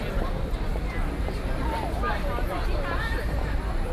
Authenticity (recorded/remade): recorded